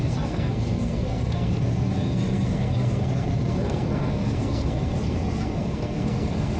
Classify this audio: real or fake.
fake